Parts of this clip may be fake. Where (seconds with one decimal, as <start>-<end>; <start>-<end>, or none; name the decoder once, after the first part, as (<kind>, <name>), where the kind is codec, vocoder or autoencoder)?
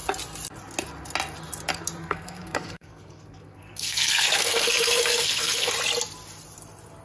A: 2.0-5.7 (codec, SNAC)